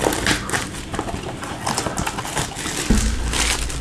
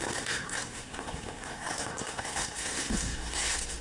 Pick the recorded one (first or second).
first